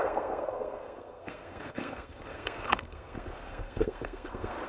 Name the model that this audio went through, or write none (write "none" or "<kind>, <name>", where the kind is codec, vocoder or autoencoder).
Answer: codec, SNAC